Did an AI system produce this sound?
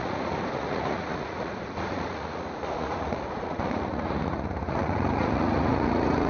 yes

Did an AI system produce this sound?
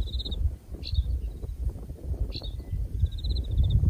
yes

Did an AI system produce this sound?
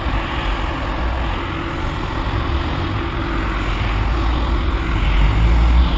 no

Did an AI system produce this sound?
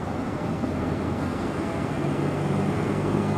yes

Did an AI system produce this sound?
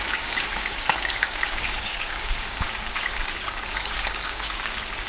yes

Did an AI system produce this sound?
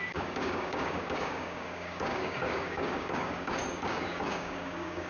yes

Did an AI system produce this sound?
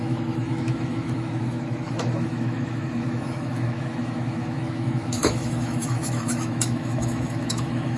yes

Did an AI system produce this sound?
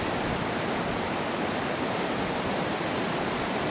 no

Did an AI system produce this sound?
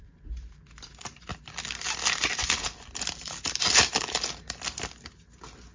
no